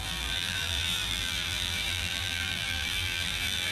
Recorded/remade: remade